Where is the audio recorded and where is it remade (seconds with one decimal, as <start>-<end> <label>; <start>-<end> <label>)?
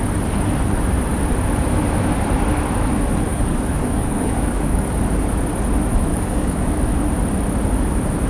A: 0.0-3.3 recorded; 3.3-4.9 remade; 4.9-6.1 recorded; 6.1-6.8 remade; 6.8-8.3 recorded